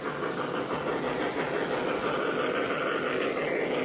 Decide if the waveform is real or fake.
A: real